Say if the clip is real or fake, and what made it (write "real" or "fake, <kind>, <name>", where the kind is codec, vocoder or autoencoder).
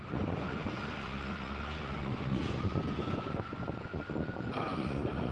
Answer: fake, vocoder, Vocos